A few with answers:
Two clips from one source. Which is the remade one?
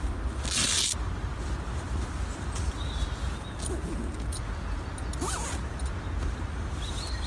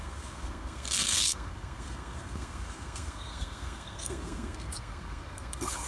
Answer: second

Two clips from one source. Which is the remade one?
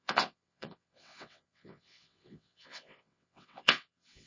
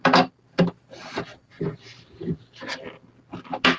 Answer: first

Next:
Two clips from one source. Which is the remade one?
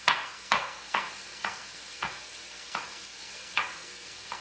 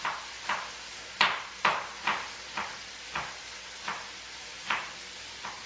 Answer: first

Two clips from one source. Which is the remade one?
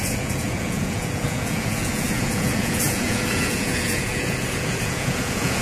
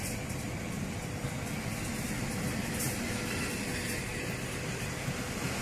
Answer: first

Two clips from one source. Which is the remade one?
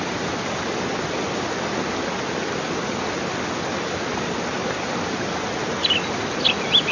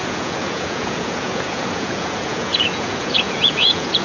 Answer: second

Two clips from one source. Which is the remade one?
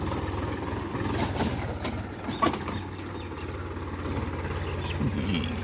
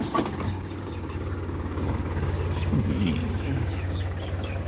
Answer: second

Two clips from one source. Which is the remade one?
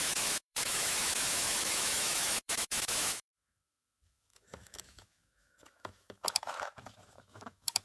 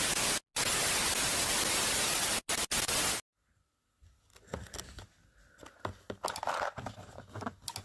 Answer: first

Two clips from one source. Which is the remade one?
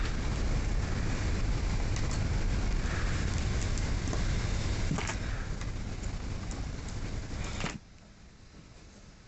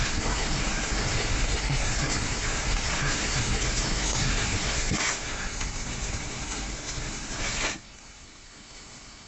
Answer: second